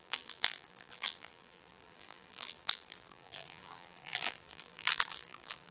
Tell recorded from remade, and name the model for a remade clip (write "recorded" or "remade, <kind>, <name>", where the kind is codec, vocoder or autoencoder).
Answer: remade, vocoder, BigVGAN v2